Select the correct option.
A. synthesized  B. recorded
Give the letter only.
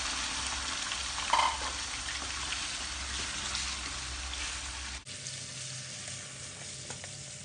B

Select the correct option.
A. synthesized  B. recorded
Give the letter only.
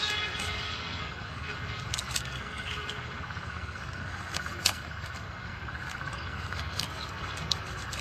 A